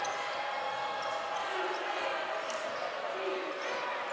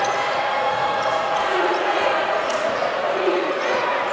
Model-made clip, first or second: second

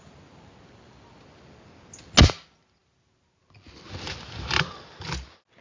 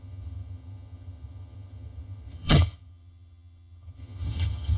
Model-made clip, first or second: second